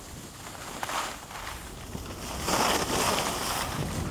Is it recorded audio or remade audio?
recorded